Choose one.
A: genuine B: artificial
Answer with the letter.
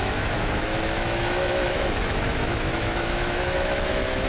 B